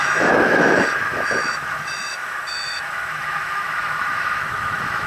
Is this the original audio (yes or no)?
no